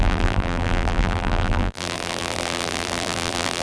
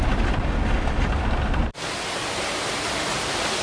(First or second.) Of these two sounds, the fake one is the first